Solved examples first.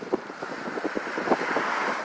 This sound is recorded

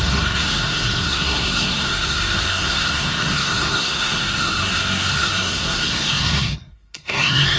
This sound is remade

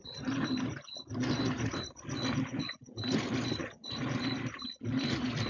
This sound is recorded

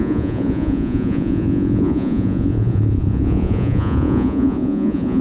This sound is remade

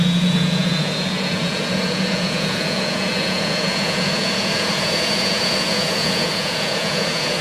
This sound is remade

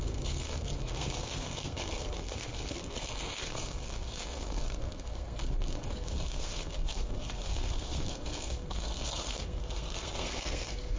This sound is remade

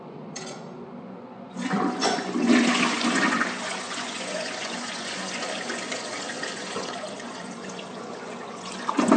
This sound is remade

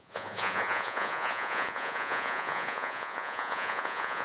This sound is remade